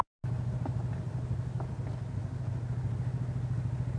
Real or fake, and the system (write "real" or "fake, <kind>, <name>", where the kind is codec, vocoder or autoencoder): real